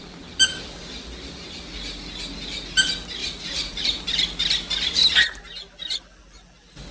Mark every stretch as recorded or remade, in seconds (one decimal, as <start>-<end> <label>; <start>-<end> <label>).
0.0-3.2 recorded; 3.2-3.8 remade; 3.8-6.9 recorded